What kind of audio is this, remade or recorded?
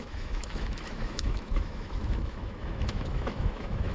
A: remade